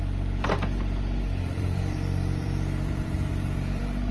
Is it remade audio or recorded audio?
remade